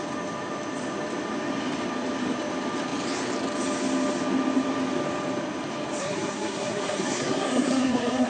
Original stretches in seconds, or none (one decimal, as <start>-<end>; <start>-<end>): 0.0-6.0